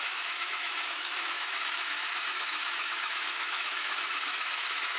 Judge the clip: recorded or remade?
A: remade